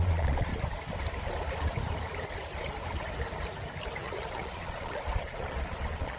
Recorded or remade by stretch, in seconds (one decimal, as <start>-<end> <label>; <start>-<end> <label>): 0.0-0.5 remade; 0.5-4.0 recorded; 4.0-6.2 remade